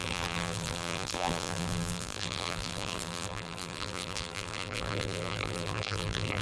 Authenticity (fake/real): fake